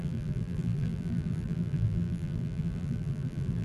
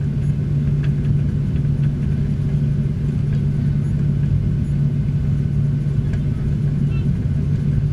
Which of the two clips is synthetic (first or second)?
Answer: first